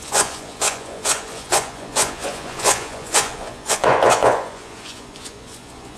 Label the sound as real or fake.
fake